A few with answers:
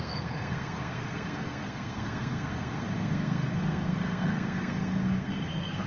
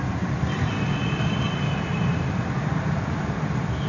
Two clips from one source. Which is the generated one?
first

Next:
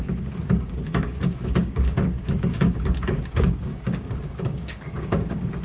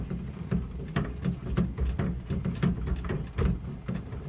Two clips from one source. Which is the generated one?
first